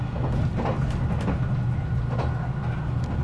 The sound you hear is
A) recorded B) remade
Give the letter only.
A